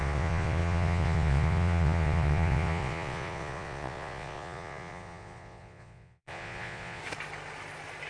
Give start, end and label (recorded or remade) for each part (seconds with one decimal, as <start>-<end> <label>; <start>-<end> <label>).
0.0-7.0 remade; 7.0-8.1 recorded